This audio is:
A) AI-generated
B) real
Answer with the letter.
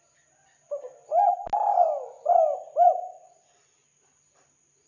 B